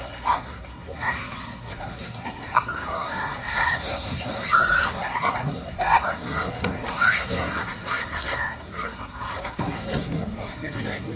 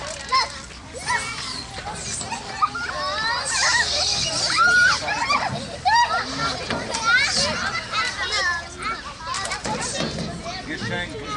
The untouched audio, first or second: second